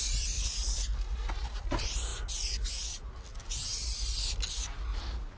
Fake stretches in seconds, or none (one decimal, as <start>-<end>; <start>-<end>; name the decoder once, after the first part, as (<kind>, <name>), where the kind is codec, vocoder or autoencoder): none